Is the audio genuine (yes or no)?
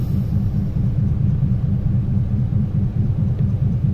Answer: no